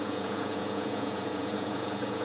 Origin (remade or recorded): remade